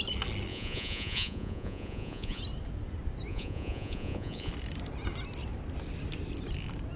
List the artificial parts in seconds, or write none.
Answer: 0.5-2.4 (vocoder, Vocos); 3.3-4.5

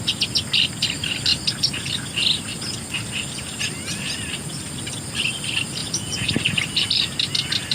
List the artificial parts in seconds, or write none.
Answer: 5.8-6.3 (vocoder, Vocos)

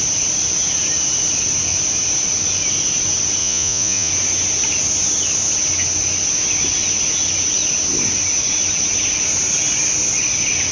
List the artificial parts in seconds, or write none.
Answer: 3.4-4.1 (vocoder, Vocos)

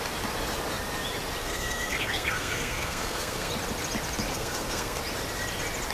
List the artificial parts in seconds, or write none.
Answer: 1.4-3.5 (codec, SNAC); 4.3-5.0

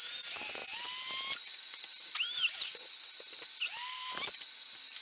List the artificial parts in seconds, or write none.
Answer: none

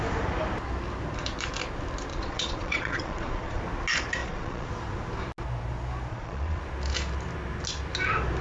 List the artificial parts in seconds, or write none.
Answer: 2.1-3.6 (vocoder, Vocos); 4.2-4.7; 6.1-6.6

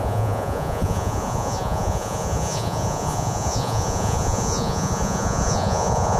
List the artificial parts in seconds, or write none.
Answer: 0.0-6.2 (vocoder, Vocos)

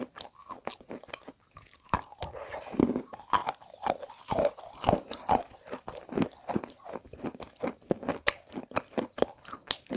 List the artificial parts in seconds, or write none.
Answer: none